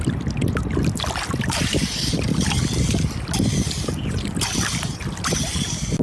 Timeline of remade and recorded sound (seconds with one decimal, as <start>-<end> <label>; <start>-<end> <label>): 0.0-1.7 recorded; 1.7-2.3 remade; 2.3-6.0 recorded